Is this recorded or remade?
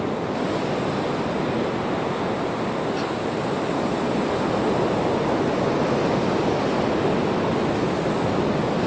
recorded